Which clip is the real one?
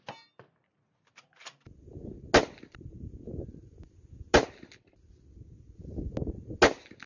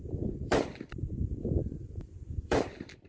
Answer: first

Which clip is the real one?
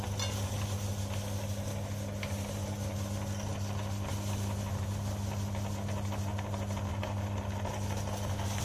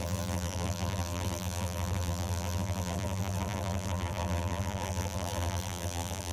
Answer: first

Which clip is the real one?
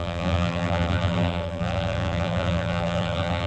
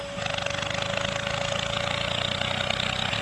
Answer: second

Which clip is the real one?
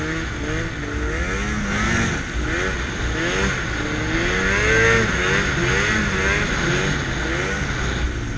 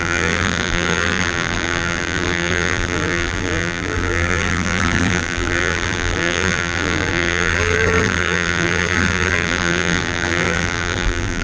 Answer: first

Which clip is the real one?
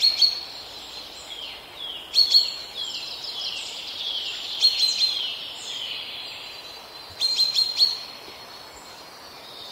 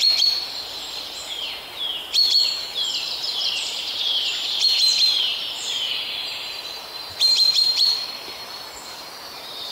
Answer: first